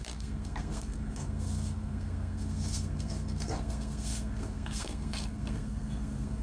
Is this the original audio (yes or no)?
no